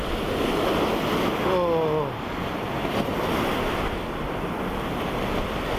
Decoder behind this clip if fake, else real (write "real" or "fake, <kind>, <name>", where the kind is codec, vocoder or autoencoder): real